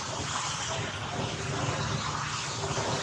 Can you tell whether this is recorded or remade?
recorded